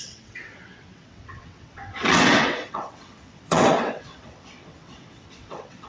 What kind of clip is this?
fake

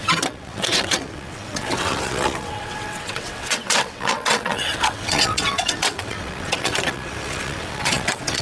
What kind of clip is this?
fake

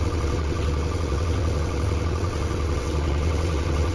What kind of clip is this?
fake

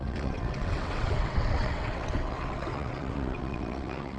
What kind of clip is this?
fake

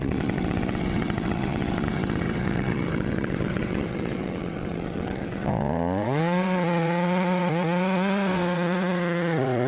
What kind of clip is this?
fake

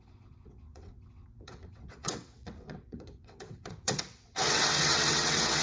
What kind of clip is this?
fake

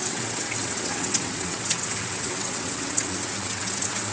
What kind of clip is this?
fake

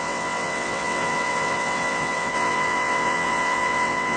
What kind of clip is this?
fake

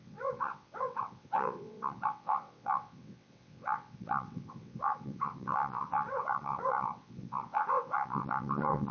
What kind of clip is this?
fake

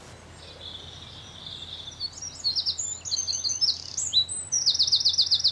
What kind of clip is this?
real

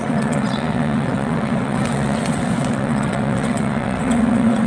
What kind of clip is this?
fake